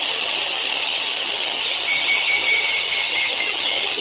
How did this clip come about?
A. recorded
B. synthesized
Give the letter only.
B